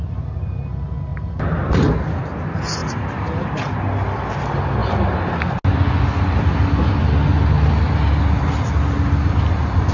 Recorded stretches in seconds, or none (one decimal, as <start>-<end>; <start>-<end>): 0.0-1.1; 1.6-9.9